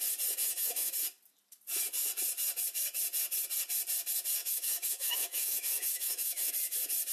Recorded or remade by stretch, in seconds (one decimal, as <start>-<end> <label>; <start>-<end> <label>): 0.0-0.4 recorded; 0.4-0.9 remade; 0.9-4.4 recorded; 4.4-6.5 remade; 6.5-7.1 recorded